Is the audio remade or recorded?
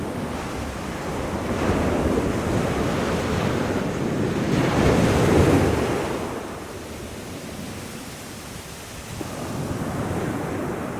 recorded